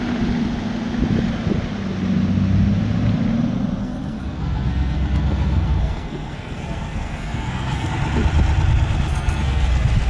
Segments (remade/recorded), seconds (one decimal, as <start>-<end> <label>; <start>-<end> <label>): 0.0-3.8 recorded; 3.8-7.9 remade; 7.9-9.1 recorded; 9.1-9.7 remade; 9.7-10.1 recorded